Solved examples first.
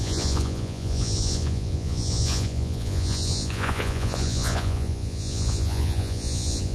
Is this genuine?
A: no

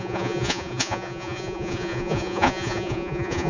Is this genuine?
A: no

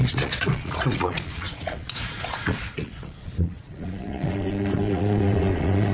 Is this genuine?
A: no